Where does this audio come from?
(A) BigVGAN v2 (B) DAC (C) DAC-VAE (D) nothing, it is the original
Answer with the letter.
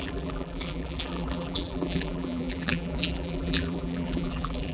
A